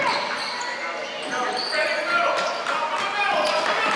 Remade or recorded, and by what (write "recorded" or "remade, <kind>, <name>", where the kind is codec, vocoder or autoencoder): recorded